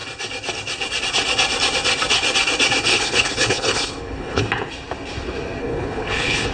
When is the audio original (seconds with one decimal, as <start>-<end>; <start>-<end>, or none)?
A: 0.0-2.9; 4.4-5.6